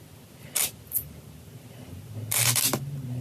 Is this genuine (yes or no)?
yes